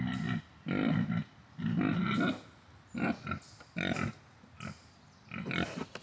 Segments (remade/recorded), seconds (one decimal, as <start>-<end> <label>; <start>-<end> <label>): 0.0-6.0 recorded